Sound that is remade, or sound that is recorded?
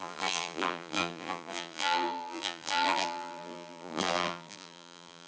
remade